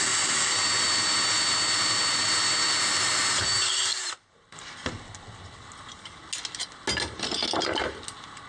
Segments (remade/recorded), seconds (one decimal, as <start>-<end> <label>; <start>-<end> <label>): 0.0-8.5 recorded